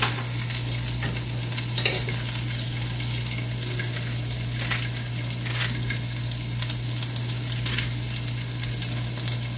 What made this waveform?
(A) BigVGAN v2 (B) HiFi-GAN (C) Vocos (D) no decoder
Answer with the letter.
D